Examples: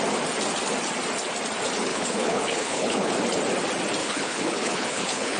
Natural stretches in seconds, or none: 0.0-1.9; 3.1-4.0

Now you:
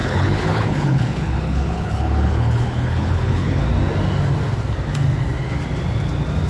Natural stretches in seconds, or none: 3.6-6.5

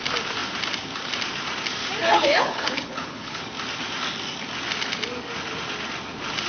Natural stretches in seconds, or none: 0.0-2.0; 3.4-6.5

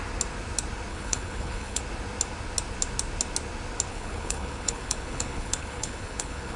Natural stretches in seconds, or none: 0.0-0.9; 1.8-3.9